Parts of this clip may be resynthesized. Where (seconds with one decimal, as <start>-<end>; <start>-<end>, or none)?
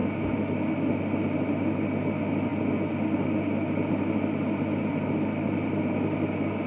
none